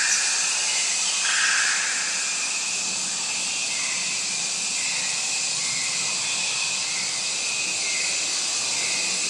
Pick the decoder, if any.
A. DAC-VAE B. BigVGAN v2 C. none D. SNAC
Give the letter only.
C